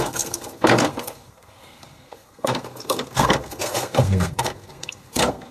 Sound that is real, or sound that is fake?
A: fake